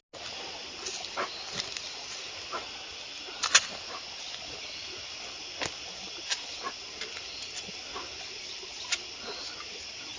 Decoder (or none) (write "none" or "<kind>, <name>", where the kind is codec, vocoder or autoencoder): none